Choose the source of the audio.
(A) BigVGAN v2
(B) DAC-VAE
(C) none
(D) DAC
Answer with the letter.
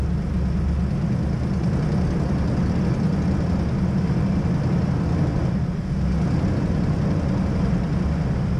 C